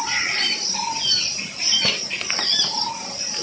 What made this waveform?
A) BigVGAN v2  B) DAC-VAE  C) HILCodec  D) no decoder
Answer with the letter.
A